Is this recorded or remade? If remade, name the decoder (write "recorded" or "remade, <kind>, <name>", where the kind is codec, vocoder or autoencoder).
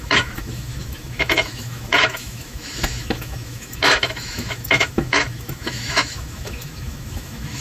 remade, autoencoder, DAC-VAE